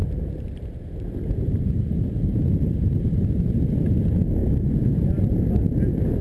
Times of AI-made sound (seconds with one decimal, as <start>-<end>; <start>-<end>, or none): 0.0-3.1; 4.4-5.4